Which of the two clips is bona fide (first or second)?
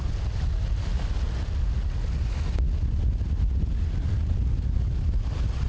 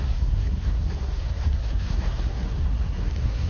first